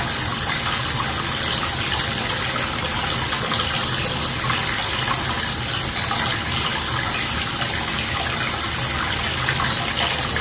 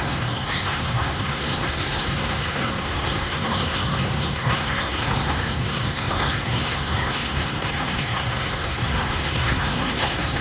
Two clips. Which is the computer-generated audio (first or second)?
second